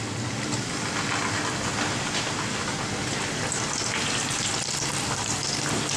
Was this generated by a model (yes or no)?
no